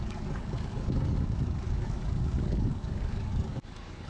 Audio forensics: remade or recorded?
remade